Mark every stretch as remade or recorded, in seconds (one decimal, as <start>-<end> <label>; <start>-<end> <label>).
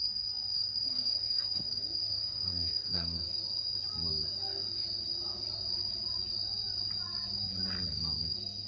0.0-3.4 remade; 3.4-7.9 recorded; 7.9-8.7 remade